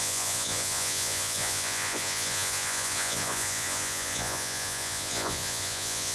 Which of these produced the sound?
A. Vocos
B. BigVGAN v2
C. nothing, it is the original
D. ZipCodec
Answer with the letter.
A